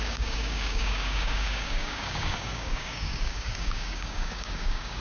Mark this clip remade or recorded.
remade